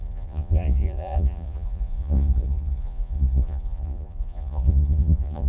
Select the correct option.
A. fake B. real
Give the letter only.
A